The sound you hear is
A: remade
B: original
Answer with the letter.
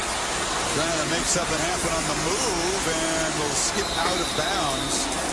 B